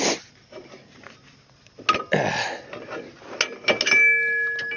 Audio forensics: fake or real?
real